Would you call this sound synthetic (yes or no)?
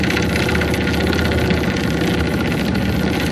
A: no